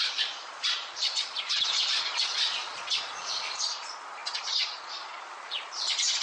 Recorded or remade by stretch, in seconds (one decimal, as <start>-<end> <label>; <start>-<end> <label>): 0.0-6.2 remade